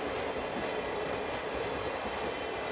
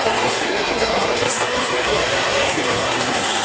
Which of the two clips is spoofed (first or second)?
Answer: second